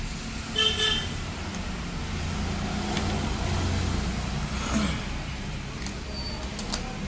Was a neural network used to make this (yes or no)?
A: no